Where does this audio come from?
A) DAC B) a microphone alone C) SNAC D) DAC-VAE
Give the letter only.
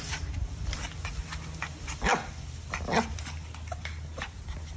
B